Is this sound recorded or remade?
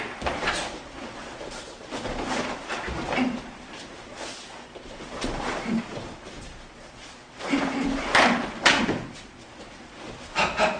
remade